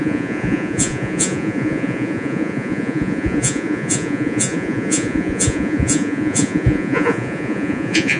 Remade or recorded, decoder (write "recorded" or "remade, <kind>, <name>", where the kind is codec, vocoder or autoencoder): remade, vocoder, Vocos